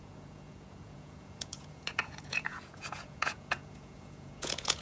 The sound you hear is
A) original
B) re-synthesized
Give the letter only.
B